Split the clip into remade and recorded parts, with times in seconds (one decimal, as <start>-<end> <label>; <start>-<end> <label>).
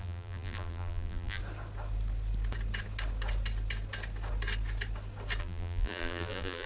0.0-1.4 remade; 1.4-5.4 recorded; 5.4-6.7 remade